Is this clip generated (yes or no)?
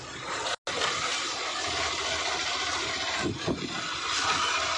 no